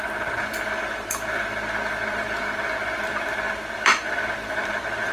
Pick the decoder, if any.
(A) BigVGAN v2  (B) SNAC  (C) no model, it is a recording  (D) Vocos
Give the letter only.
A